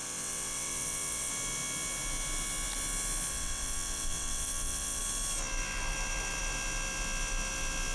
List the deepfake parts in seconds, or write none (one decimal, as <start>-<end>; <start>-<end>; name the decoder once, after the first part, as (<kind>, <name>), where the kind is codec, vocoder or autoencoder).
0.0-1.3 (vocoder, WaveNeXt); 3.3-5.0